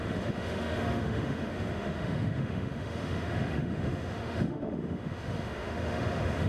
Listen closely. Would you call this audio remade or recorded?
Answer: remade